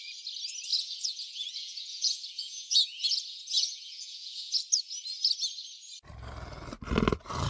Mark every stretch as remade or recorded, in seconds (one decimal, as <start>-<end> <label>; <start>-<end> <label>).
0.0-0.7 recorded; 0.7-4.6 remade; 4.6-7.5 recorded